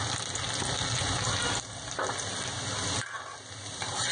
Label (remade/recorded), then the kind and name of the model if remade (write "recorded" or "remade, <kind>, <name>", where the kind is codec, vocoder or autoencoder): recorded